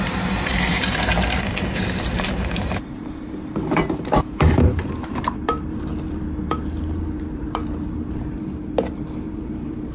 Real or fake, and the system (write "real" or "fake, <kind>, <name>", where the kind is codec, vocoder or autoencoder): fake, vocoder, BigVGAN v2